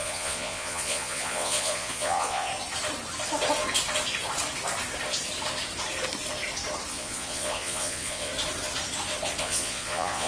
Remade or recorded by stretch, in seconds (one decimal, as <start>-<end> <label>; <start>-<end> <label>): 0.0-2.5 remade; 2.5-6.9 recorded; 6.9-8.3 remade; 8.3-9.4 recorded; 9.4-10.3 remade